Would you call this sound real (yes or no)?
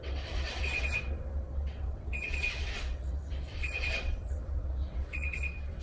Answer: no